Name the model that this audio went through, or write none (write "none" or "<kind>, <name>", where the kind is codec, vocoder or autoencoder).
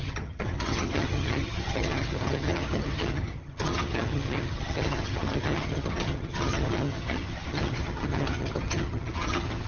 vocoder, HiFi-GAN